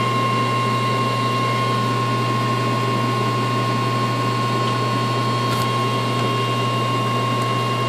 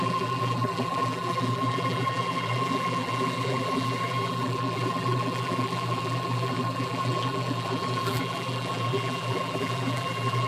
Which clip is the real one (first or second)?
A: first